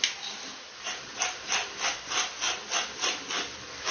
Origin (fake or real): real